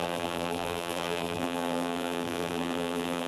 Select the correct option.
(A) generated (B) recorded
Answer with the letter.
A